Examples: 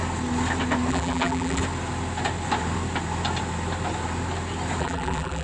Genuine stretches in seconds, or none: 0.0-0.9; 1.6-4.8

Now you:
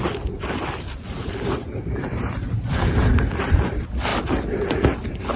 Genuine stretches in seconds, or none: 0.0-1.2; 3.1-5.4

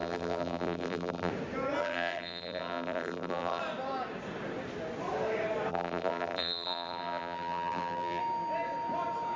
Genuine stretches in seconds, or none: 1.3-1.8; 3.6-5.7; 8.2-9.4

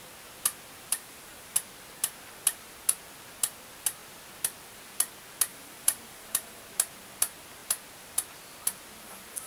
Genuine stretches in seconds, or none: 0.0-0.9; 1.5-5.5; 6.6-9.5